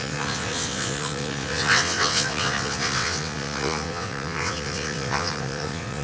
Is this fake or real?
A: fake